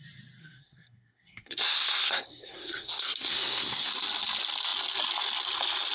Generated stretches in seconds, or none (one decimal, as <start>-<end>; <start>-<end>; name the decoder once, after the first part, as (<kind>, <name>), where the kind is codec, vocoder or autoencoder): 0.4-3.9 (codec, SNAC)